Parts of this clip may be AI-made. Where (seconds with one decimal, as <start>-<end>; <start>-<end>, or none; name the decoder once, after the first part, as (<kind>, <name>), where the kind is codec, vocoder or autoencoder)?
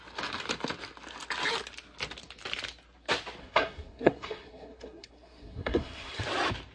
3.4-6.2 (codec, SNAC)